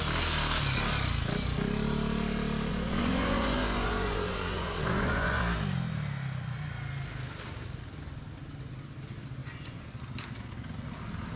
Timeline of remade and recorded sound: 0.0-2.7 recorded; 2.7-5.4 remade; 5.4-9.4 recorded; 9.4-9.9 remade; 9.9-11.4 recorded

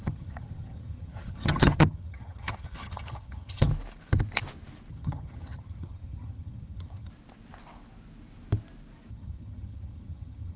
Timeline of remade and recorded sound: 0.0-3.7 remade; 3.7-4.9 recorded; 4.9-7.1 remade; 7.1-9.1 recorded; 9.1-10.6 remade

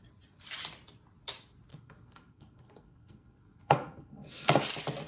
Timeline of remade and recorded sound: 0.0-1.7 recorded; 1.7-4.6 remade; 4.6-5.1 recorded

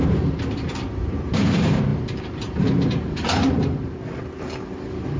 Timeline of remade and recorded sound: 0.0-5.2 remade

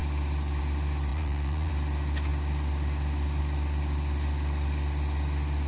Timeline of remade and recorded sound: 0.0-1.1 recorded; 1.1-1.7 remade; 1.7-5.7 recorded

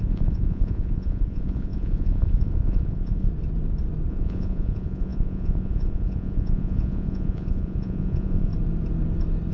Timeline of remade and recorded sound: 0.0-3.3 remade; 3.3-4.1 recorded; 4.1-8.5 remade; 8.5-9.5 recorded

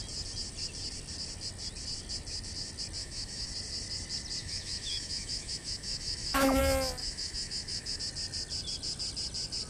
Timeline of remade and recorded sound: 0.0-3.0 recorded; 3.0-3.5 remade; 3.5-4.4 recorded; 4.4-6.6 remade; 6.6-7.0 recorded; 7.0-8.0 remade; 8.0-9.7 recorded

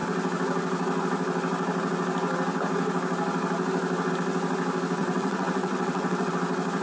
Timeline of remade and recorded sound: 0.0-5.0 recorded; 5.0-6.3 remade; 6.3-6.8 recorded